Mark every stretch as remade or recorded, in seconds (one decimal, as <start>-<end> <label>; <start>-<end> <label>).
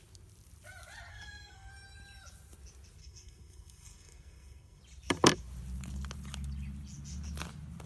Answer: 0.0-1.1 recorded; 1.1-1.7 remade; 1.7-3.0 recorded; 3.0-4.8 remade; 4.8-7.9 recorded